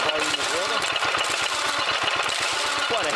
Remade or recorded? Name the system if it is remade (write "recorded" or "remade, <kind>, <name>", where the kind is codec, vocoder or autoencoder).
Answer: recorded